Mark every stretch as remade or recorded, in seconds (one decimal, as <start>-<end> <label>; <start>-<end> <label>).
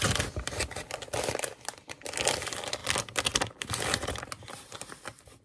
0.0-5.4 recorded